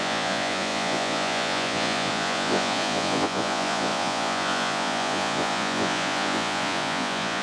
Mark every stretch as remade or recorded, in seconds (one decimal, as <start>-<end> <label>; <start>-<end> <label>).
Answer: 0.0-7.4 remade